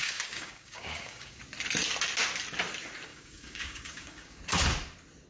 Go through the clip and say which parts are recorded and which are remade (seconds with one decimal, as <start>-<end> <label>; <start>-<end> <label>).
0.0-1.4 remade; 1.4-3.1 recorded; 3.1-4.4 remade; 4.4-5.3 recorded